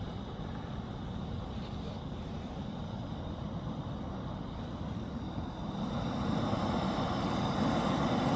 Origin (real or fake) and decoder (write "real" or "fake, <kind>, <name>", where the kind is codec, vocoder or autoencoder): real